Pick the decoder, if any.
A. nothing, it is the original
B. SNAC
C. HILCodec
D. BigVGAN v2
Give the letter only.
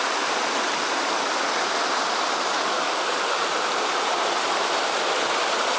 A